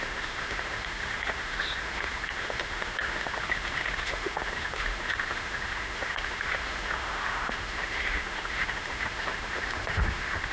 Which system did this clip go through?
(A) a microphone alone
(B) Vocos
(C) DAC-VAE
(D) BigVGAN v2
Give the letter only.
C